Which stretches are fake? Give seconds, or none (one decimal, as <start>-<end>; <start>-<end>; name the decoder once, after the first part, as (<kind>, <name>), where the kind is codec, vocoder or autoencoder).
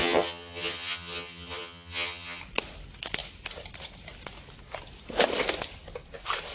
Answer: 0.0-2.4 (vocoder, HiFi-GAN)